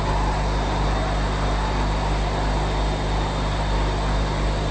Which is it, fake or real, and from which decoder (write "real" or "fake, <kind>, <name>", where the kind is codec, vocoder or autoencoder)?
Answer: real